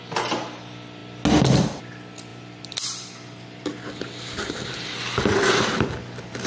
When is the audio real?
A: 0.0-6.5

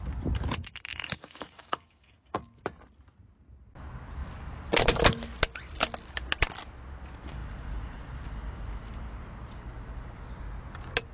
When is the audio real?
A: 0.0-0.9; 2.6-11.1

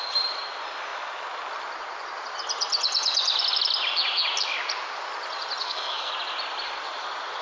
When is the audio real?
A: 0.0-5.6; 6.1-7.4

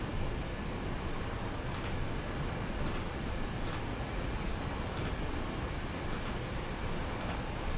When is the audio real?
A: 0.0-3.9; 4.5-7.8

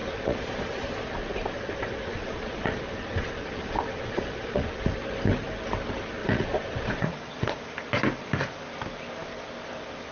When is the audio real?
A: 5.0-6.2; 7.6-10.1